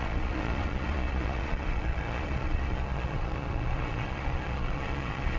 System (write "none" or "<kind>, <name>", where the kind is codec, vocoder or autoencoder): vocoder, Vocos